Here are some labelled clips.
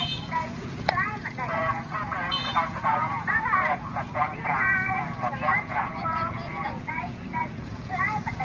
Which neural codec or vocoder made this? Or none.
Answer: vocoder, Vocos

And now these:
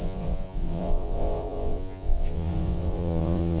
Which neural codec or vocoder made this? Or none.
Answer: vocoder, Vocos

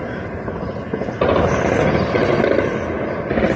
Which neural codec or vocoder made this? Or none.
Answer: none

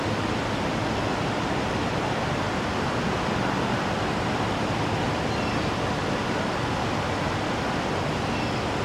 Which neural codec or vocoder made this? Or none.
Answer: none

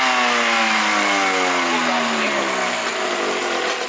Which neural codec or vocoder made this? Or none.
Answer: none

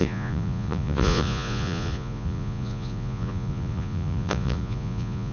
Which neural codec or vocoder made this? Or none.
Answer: vocoder, Vocos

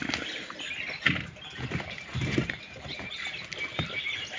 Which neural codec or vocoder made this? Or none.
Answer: none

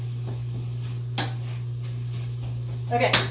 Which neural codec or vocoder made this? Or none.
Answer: none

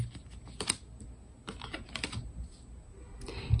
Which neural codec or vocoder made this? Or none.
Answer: none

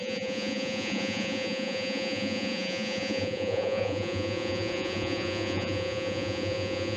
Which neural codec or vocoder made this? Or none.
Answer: vocoder, Vocos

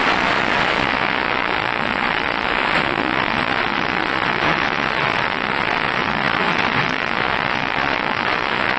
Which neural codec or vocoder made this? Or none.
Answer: vocoder, Vocos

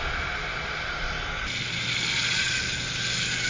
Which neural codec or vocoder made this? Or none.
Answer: none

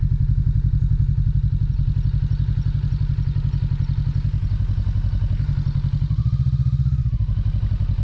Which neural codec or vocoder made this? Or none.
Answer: none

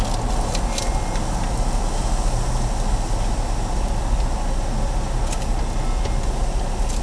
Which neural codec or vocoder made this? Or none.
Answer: none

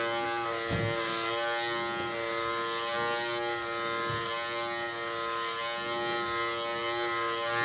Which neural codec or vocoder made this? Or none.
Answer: none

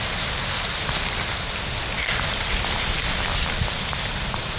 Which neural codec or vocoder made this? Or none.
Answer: none